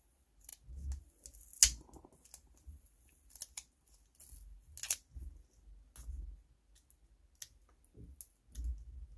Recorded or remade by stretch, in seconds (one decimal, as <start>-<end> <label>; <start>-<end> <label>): 0.0-9.2 recorded